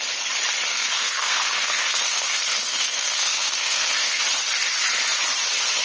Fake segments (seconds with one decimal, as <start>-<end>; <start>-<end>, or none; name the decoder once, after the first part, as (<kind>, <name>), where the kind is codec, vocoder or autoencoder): 0.7-4.2 (codec, SNAC)